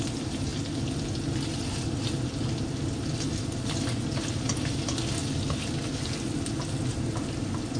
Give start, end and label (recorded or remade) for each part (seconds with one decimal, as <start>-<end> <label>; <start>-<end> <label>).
0.0-7.8 recorded